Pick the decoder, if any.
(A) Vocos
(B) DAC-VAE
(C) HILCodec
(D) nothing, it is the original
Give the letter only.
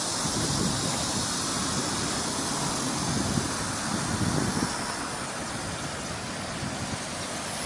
D